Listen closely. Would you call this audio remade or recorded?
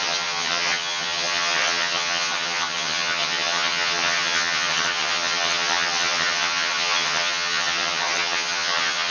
remade